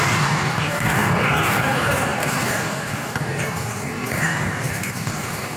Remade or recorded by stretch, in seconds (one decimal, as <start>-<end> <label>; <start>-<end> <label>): 0.0-5.6 remade